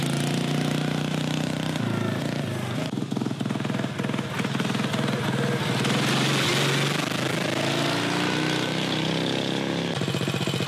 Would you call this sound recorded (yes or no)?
yes